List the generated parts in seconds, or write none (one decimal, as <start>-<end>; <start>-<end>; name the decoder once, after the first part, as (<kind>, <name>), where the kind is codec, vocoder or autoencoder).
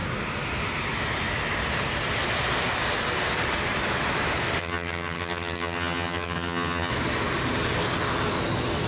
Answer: 4.6-6.9 (vocoder, HiFi-GAN)